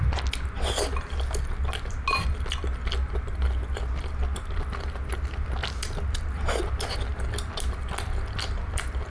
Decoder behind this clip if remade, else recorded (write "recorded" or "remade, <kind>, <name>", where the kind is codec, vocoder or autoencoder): recorded